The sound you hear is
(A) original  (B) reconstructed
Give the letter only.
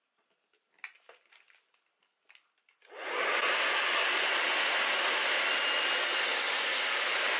A